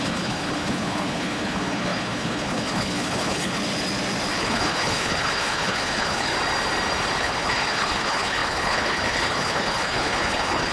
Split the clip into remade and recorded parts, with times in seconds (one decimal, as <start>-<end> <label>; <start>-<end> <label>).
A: 0.0-3.6 remade; 3.6-4.3 recorded; 4.3-6.3 remade; 6.3-7.2 recorded; 7.2-10.7 remade